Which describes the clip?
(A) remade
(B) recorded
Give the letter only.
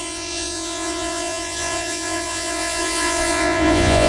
A